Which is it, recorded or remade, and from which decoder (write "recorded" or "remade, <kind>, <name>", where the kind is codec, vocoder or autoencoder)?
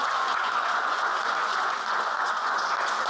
remade, vocoder, Vocos